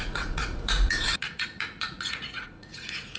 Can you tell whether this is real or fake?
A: fake